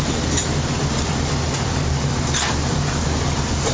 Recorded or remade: remade